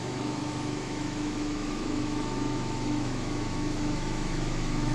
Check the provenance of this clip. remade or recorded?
remade